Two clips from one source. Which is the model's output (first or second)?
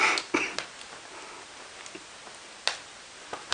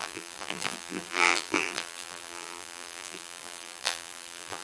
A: second